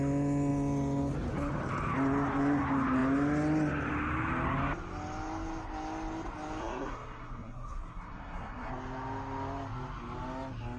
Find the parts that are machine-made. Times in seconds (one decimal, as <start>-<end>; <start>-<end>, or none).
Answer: 6.6-8.7